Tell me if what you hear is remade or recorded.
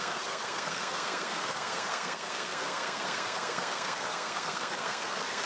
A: remade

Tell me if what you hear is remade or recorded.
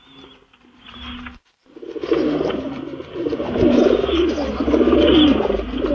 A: recorded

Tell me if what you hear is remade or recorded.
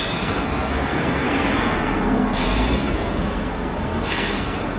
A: remade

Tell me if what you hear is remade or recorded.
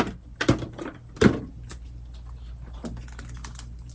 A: recorded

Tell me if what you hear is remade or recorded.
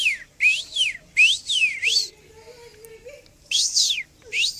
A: recorded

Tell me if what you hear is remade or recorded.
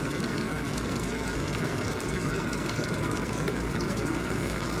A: remade